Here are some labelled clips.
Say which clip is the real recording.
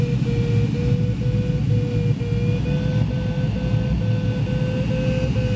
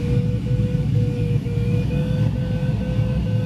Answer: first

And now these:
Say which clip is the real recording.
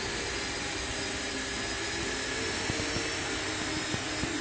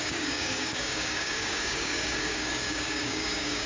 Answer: first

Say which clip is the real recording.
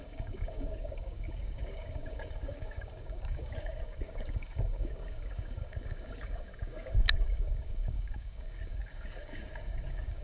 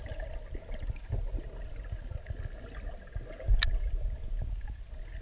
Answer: second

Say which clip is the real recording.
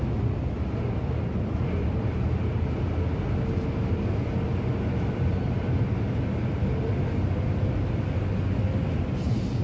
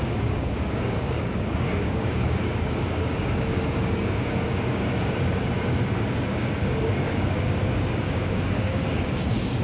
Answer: first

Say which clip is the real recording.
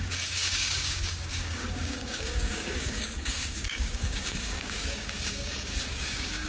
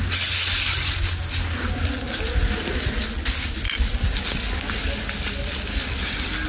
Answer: second